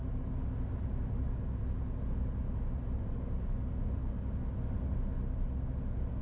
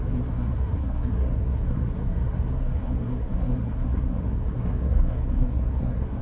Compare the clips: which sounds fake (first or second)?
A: second